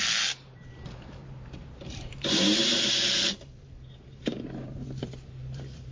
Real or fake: fake